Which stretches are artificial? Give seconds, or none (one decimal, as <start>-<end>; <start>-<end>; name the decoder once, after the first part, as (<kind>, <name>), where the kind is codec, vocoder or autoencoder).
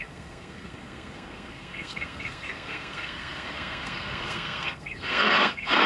0.0-5.9 (codec, SNAC)